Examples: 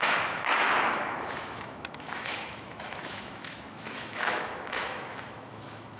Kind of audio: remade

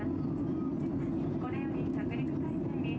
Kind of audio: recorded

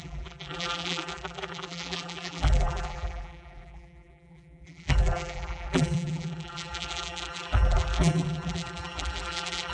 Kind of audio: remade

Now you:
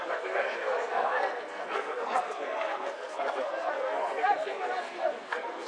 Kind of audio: remade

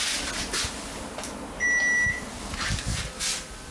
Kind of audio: recorded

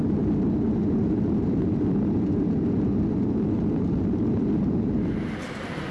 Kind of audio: recorded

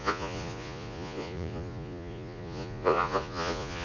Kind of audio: remade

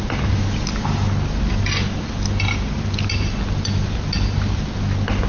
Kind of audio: recorded